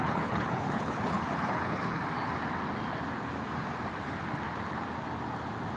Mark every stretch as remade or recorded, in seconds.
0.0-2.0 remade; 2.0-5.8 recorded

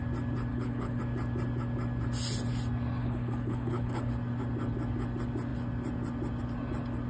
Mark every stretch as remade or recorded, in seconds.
0.0-0.5 recorded; 0.5-1.0 remade; 1.0-3.0 recorded; 3.0-4.1 remade; 4.1-7.1 recorded

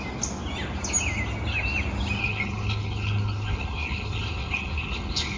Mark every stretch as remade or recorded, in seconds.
0.0-2.2 recorded; 2.2-5.4 remade

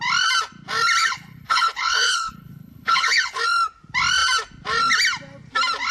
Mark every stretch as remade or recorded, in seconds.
0.0-1.0 recorded; 1.0-3.4 remade; 3.4-5.9 recorded

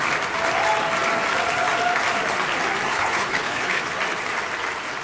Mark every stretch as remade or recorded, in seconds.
0.0-2.9 recorded; 2.9-3.8 remade; 3.8-5.0 recorded

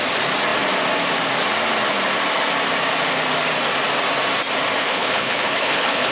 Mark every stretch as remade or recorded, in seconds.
0.0-4.8 recorded; 4.8-6.1 remade

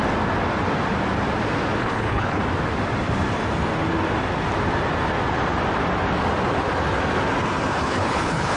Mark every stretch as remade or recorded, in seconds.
0.0-1.8 recorded; 1.8-2.4 remade; 2.4-7.7 recorded; 7.7-8.6 remade

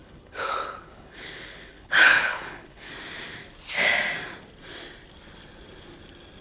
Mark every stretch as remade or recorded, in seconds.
0.0-2.9 remade; 2.9-6.4 recorded